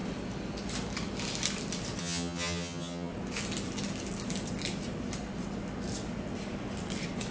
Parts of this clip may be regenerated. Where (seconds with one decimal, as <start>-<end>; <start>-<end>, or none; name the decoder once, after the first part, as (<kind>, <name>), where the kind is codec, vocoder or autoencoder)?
2.0-3.1 (vocoder, HiFi-GAN)